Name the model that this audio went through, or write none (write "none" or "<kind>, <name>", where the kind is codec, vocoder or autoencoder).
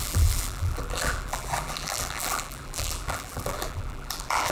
vocoder, BigVGAN v2